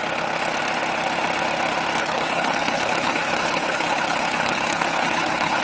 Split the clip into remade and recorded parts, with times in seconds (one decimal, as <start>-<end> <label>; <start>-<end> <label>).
0.0-2.0 recorded; 2.0-5.6 remade

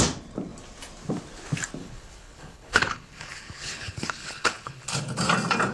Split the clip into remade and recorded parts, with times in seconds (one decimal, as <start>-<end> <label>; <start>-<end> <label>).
0.0-1.8 recorded; 1.8-5.2 remade; 5.2-5.7 recorded

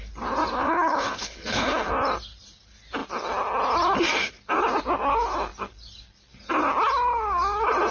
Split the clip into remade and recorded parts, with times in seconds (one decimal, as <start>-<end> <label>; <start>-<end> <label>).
0.0-0.6 recorded; 0.6-1.9 remade; 1.9-7.9 recorded

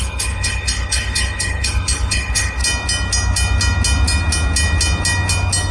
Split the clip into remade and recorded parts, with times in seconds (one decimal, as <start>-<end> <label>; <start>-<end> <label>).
0.0-2.6 remade; 2.6-5.7 recorded

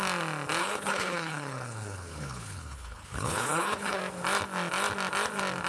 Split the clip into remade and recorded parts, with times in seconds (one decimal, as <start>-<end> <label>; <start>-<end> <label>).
0.0-0.6 recorded; 0.6-4.0 remade; 4.0-5.7 recorded

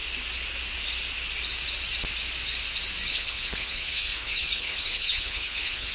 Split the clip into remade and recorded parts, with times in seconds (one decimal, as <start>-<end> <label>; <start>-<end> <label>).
0.0-3.1 recorded; 3.1-5.9 remade

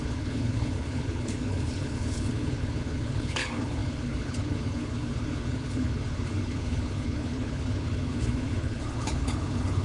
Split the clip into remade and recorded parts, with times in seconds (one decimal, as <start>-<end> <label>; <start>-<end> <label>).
0.0-9.8 remade